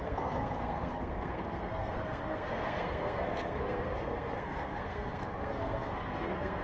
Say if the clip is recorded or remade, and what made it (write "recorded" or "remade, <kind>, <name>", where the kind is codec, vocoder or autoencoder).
remade, codec, SNAC